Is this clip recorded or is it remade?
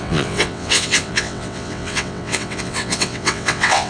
remade